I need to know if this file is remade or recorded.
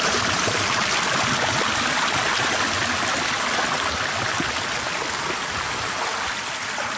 recorded